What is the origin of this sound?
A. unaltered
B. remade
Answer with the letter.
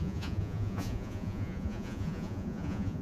B